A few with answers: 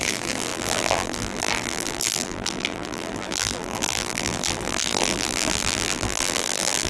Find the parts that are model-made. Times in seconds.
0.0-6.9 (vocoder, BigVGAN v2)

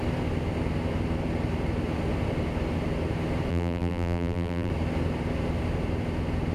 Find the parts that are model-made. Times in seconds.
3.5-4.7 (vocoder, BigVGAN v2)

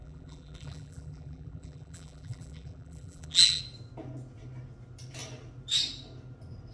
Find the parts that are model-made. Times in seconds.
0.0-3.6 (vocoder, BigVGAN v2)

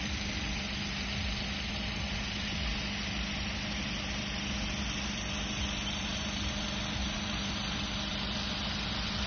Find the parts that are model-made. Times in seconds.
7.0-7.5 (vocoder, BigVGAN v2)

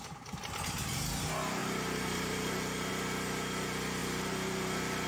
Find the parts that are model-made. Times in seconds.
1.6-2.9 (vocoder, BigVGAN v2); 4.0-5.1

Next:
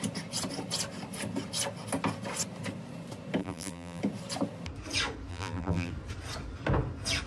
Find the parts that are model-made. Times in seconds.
3.4-4.0 (vocoder, BigVGAN v2); 5.3-5.9